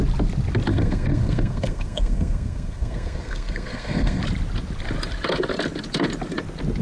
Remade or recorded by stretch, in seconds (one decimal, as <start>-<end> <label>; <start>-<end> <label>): 0.0-0.7 recorded; 0.7-4.2 remade; 4.2-6.8 recorded